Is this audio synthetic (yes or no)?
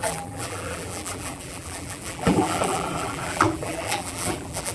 yes